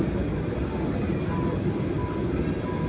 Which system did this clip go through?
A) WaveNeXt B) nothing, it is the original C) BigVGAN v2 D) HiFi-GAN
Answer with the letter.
B